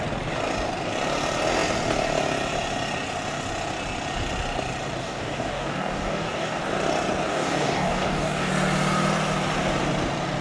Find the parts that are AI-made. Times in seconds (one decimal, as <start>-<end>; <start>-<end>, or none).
5.0-6.6; 7.3-8.5